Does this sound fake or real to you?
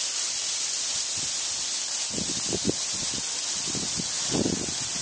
real